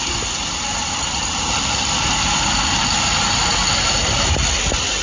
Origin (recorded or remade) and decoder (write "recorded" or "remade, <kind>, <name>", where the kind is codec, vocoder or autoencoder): recorded